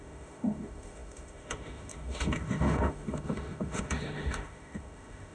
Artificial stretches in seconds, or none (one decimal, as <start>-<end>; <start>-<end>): 0.0-5.3